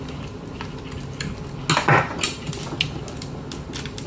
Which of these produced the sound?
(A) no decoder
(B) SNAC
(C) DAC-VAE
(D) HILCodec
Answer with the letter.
A